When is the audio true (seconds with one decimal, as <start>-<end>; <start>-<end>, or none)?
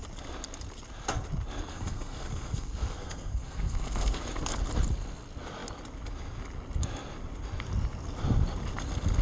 0.0-1.7; 4.2-9.2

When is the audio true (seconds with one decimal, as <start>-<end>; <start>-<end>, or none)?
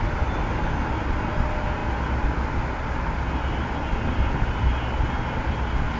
0.0-6.0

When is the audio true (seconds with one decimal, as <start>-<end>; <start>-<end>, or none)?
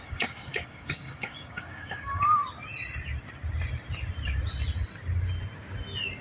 2.4-6.2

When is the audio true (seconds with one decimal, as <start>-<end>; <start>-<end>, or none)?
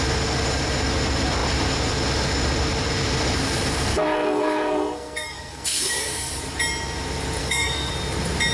0.0-3.9; 6.4-7.4; 7.9-8.5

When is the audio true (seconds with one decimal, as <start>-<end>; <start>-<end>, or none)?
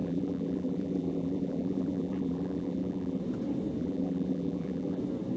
3.2-3.8; 5.0-5.4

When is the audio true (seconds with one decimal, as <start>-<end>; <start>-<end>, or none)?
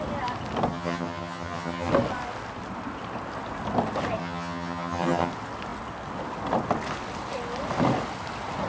0.0-0.7; 1.9-4.2; 5.3-8.7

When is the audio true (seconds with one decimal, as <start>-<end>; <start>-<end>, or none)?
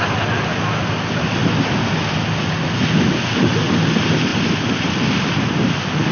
0.0-6.1